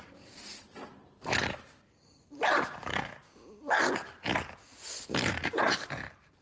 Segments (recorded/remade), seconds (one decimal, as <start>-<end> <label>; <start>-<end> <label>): 0.0-3.2 remade; 3.2-5.1 recorded; 5.1-6.4 remade